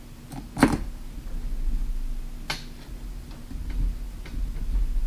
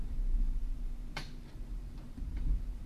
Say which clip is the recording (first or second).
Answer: first